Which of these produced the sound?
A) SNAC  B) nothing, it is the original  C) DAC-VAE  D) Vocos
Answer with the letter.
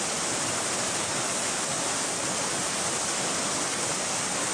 B